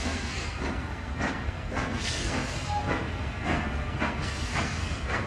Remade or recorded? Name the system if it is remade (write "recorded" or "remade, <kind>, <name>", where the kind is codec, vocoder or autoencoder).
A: remade, codec, SNAC